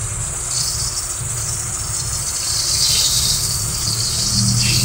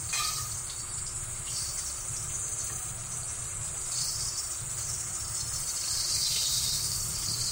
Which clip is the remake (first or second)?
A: second